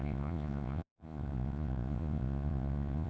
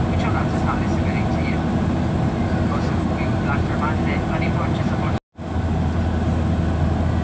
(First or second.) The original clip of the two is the second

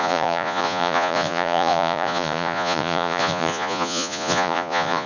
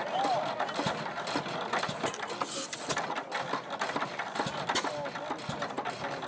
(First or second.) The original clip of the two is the second